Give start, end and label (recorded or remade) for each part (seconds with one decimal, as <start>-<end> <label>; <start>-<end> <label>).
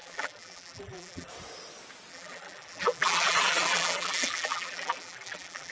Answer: 0.0-1.3 remade; 1.3-2.1 recorded; 2.1-5.7 remade